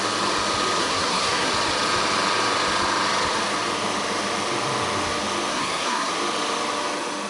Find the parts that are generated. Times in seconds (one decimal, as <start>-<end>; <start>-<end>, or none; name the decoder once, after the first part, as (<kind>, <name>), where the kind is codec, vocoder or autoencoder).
0.8-1.5 (codec, SNAC); 5.5-6.1